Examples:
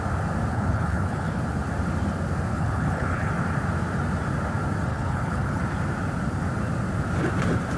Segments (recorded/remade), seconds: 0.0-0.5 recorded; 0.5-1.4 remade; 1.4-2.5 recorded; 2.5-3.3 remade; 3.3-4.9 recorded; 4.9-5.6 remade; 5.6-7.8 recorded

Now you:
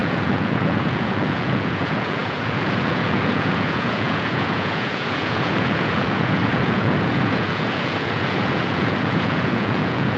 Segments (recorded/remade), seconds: 0.0-10.2 remade

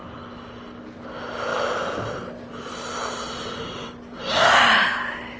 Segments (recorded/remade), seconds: 0.0-5.4 recorded

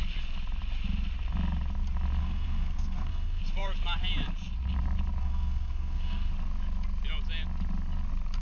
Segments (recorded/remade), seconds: 0.0-2.2 recorded; 2.2-3.4 remade; 3.4-5.2 recorded; 5.2-6.3 remade; 6.3-8.4 recorded

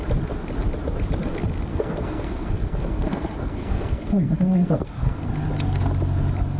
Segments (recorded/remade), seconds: 0.0-1.7 recorded; 1.7-5.3 remade; 5.3-6.6 recorded

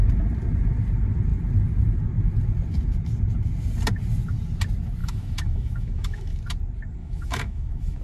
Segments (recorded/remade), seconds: 0.0-5.0 recorded; 5.0-6.4 remade; 6.4-7.0 recorded; 7.0-8.0 remade

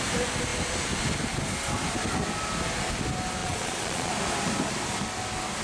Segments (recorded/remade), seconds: 0.0-3.4 recorded; 3.4-4.1 remade; 4.1-5.6 recorded